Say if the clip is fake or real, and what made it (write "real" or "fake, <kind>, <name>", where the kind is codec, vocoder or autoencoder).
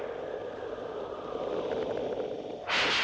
real